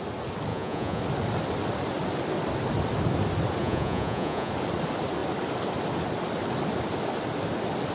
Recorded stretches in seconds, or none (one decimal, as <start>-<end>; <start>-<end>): 0.0-0.5; 1.0-3.6; 4.5-7.9

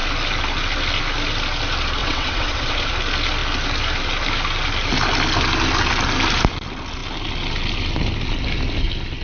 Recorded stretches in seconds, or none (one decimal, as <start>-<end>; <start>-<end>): 0.0-2.0; 2.9-9.2

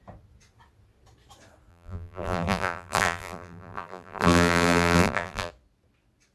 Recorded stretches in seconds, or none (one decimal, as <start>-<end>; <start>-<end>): 0.0-1.7; 5.5-6.3

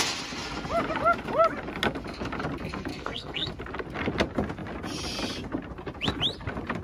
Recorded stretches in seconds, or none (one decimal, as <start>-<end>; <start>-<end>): 0.0-2.9; 3.5-6.8